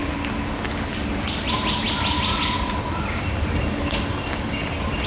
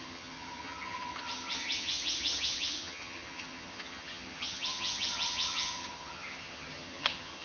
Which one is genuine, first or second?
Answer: first